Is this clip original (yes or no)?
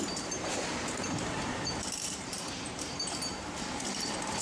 no